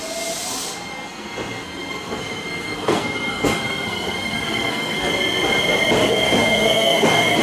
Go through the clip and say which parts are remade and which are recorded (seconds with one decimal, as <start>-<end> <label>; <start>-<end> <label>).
0.0-0.9 recorded; 0.9-5.1 remade; 5.1-6.0 recorded; 6.0-7.4 remade